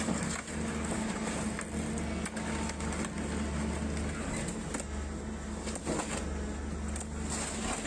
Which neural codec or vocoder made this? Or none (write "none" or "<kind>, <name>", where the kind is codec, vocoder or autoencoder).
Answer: none